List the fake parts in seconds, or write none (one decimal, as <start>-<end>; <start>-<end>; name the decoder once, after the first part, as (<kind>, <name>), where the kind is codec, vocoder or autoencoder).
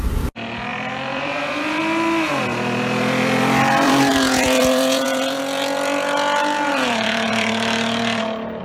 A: 0.7-1.8 (vocoder, BigVGAN v2); 2.5-5.4; 6.7-8.2